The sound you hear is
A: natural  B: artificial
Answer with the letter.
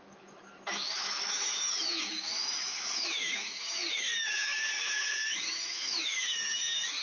B